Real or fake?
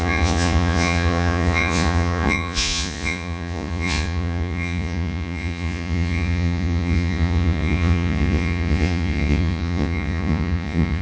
fake